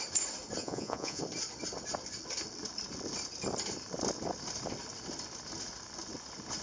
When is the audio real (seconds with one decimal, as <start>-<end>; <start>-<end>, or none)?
0.0-0.6; 1.2-6.6